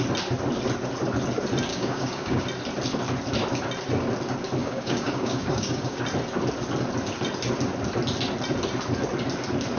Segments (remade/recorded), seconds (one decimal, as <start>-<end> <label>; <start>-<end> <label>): 0.0-1.7 recorded; 1.7-2.4 remade; 2.4-4.6 recorded; 4.6-6.0 remade; 6.0-9.8 recorded